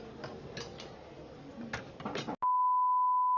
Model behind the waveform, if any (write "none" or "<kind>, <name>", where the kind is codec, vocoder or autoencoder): none